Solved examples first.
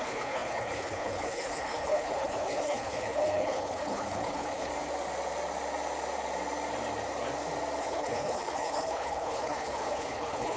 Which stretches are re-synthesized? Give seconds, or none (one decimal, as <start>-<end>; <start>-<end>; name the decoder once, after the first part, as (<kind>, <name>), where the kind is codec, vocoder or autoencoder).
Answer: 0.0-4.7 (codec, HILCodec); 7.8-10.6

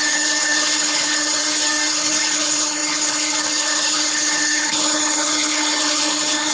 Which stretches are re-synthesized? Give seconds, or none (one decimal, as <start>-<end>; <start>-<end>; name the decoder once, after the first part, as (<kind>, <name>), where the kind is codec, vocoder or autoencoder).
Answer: 0.0-1.4 (codec, HILCodec); 1.9-6.5

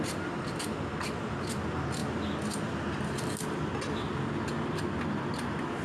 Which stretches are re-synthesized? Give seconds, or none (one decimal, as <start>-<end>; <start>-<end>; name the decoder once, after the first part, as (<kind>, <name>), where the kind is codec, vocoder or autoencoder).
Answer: none

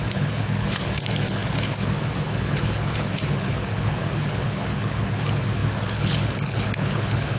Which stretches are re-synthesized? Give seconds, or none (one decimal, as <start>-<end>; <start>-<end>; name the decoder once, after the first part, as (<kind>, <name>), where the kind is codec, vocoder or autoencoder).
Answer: 0.0-7.4 (codec, HILCodec)

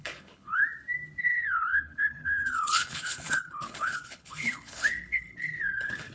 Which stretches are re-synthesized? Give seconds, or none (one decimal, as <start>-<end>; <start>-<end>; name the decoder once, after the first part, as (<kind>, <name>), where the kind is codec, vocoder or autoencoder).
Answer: 0.0-0.6 (codec, HILCodec); 1.2-6.1

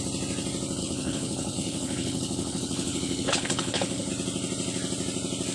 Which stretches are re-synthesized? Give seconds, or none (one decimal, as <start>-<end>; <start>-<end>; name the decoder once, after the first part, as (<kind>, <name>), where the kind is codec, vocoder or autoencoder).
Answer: 0.8-4.1 (codec, HILCodec)

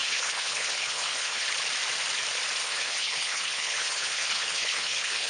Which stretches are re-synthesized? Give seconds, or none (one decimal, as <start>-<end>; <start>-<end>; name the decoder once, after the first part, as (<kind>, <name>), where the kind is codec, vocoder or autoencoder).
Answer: 0.0-1.5 (codec, HILCodec); 2.6-5.3